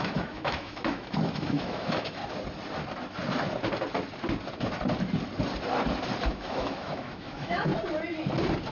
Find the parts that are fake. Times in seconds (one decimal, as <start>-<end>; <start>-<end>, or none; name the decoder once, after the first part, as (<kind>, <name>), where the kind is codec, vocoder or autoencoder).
0.0-2.2 (autoencoder, DAC-VAE); 6.3-7.7